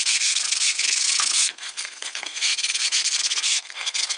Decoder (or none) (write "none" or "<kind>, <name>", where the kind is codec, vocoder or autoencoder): codec, SNAC